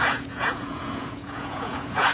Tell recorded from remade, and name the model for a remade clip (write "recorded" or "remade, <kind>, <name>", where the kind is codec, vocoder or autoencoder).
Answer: remade, vocoder, Vocos